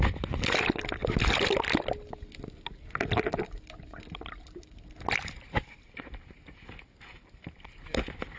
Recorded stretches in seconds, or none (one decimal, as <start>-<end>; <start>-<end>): 0.0-8.4